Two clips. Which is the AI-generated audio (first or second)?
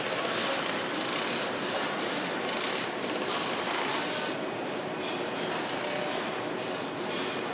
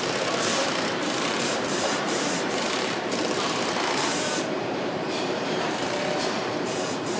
second